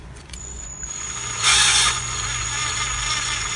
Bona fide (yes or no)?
no